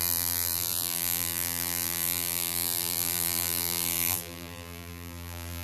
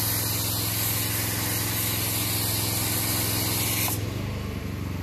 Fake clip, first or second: first